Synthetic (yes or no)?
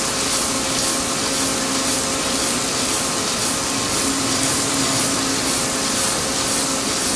no